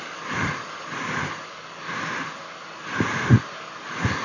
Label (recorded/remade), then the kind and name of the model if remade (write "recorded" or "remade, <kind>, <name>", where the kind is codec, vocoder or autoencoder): remade, vocoder, BigVGAN v2